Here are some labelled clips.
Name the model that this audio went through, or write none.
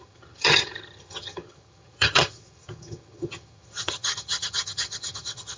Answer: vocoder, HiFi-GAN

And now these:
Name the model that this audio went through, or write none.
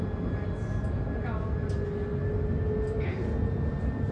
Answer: none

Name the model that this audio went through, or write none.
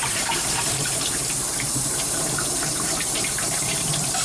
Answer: vocoder, BigVGAN v2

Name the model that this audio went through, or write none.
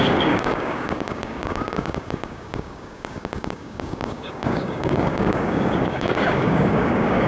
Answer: codec, DAC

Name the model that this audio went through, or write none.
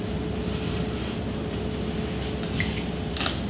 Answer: none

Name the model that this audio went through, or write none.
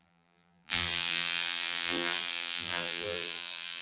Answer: vocoder, BigVGAN v2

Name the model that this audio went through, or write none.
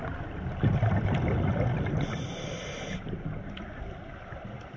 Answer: none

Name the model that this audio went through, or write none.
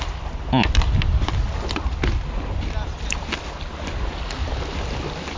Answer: none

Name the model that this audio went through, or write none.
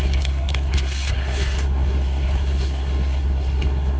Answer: codec, SNAC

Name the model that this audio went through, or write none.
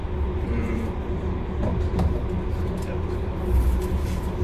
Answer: none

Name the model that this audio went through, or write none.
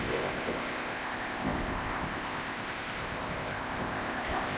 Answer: codec, ZipCodec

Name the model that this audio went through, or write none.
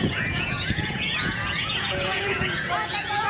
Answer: vocoder, Vocos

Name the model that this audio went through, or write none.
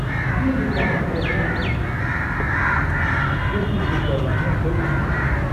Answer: none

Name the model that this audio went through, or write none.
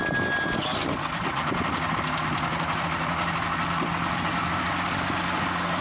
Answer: none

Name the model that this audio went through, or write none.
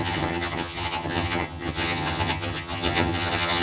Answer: vocoder, HiFi-GAN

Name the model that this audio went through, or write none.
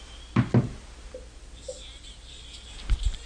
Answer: none